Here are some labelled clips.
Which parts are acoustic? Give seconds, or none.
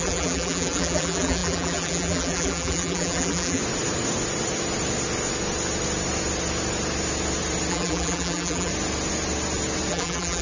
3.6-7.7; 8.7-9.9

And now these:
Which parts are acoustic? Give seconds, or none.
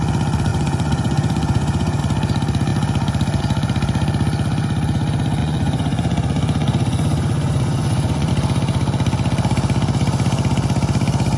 0.0-0.5; 2.0-5.4; 8.3-11.4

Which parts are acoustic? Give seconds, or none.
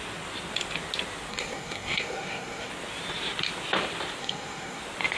0.0-1.3; 2.7-4.2; 4.8-5.2